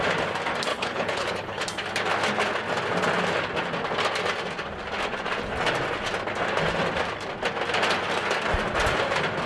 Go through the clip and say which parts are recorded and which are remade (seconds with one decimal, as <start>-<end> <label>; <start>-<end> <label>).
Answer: 0.0-0.7 recorded; 0.7-1.6 remade; 1.6-9.5 recorded